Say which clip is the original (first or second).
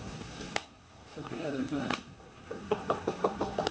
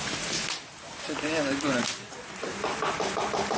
second